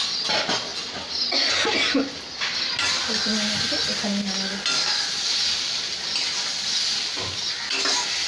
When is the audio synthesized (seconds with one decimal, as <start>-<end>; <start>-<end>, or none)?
none